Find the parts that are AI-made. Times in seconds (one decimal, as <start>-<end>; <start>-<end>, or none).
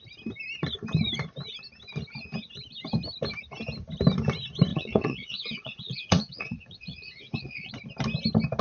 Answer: 4.7-7.7